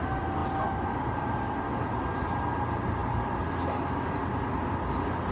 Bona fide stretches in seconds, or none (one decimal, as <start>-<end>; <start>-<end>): 0.0-5.3